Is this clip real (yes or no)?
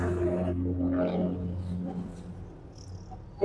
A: yes